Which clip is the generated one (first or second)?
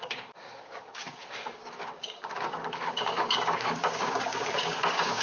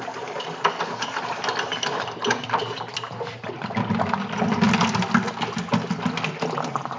first